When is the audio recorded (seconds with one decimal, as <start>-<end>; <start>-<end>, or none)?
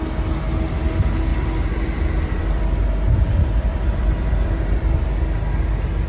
0.0-1.3; 5.0-6.1